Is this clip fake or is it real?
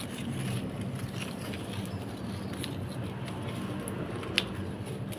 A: real